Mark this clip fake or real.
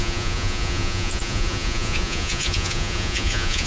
fake